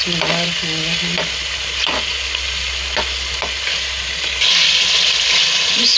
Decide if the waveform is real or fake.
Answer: real